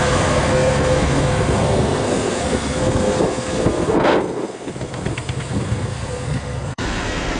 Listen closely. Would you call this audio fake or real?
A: fake